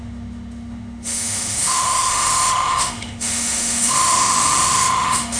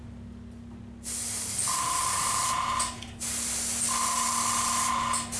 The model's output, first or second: first